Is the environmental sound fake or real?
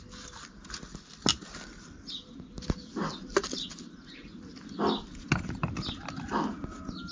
real